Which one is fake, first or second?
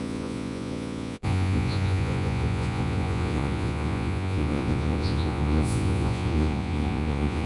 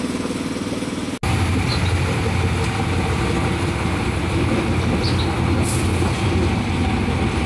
first